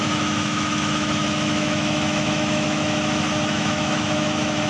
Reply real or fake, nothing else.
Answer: fake